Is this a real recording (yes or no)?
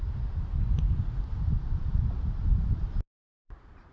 yes